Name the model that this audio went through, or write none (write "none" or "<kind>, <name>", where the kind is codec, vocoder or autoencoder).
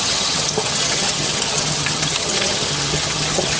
vocoder, HiFi-GAN